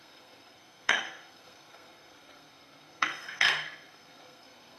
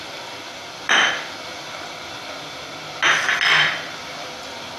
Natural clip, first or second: second